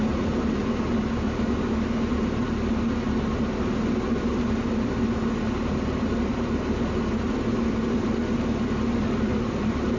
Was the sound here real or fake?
real